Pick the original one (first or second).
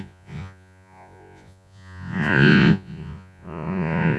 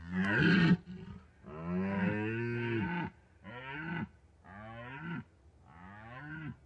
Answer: second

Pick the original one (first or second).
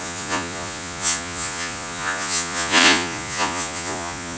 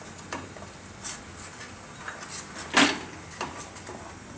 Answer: second